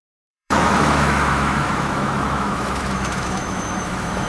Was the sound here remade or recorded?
remade